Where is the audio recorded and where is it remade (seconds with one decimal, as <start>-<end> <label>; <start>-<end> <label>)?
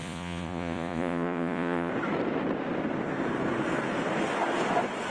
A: 0.0-1.9 remade; 1.9-5.1 recorded